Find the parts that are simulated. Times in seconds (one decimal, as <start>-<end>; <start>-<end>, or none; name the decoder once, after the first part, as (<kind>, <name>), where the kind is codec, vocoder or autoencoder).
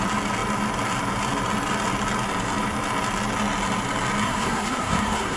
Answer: 4.2-5.4 (codec, SNAC)